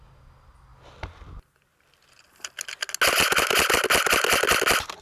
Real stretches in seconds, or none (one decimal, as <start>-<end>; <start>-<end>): 0.0-5.0